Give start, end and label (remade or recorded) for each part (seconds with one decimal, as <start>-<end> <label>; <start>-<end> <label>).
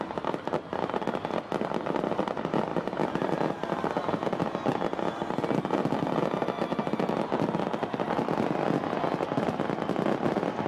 0.0-10.7 recorded